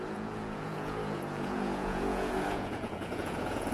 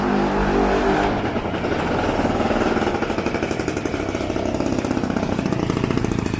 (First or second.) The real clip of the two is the second